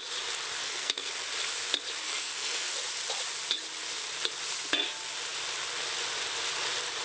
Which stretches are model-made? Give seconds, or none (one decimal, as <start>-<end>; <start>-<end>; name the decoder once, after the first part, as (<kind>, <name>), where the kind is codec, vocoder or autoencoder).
0.6-1.1 (codec, SNAC); 2.0-2.7